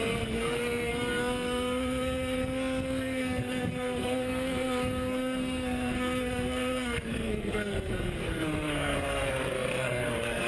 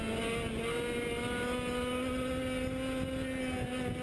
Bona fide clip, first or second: second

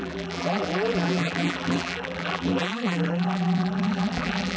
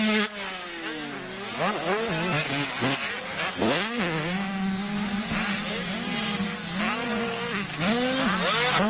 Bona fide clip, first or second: second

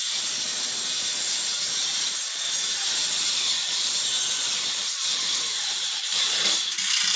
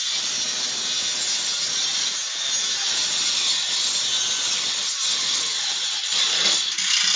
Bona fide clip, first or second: second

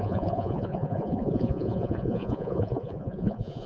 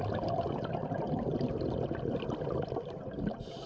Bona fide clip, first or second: second